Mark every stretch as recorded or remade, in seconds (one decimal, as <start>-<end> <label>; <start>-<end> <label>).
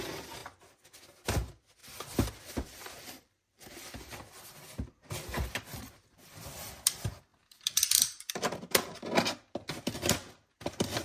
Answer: 0.0-1.8 recorded; 1.8-6.4 remade; 6.4-7.3 recorded; 7.3-8.3 remade; 8.3-11.0 recorded